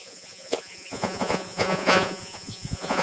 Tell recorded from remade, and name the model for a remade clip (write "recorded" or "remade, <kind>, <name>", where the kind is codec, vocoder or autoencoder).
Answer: remade, vocoder, Vocos